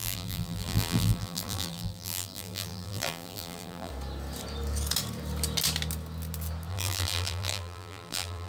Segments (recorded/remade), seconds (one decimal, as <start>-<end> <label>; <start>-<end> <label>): 0.0-3.9 remade; 3.9-6.7 recorded; 6.7-8.5 remade